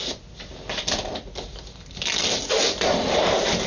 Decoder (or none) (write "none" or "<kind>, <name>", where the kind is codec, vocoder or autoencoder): none